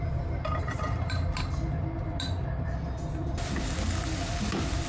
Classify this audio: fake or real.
real